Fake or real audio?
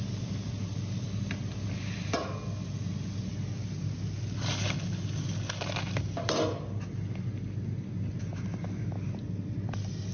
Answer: real